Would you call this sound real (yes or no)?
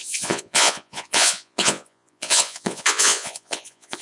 no